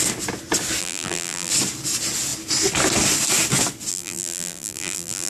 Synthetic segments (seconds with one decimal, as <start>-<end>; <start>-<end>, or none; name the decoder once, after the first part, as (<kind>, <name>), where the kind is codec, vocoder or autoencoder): 0.8-1.5 (vocoder, BigVGAN v2); 3.9-5.3